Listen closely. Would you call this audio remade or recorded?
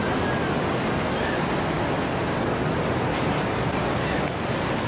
recorded